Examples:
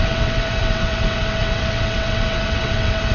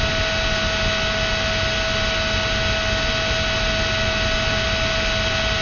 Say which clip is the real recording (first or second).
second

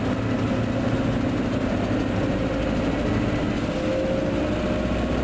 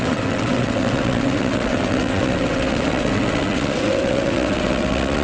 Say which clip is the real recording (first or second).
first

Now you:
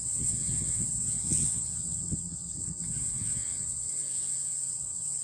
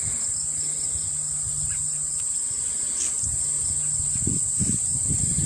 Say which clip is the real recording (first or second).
second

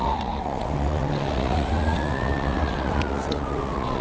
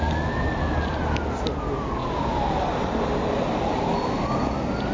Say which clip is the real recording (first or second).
second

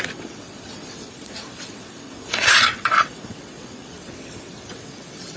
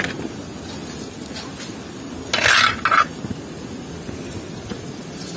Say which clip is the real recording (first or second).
second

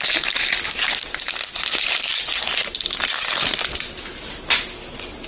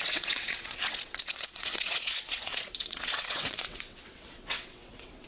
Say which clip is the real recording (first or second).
first